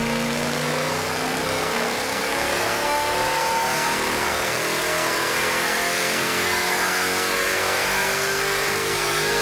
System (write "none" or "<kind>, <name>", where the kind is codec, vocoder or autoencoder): codec, SNAC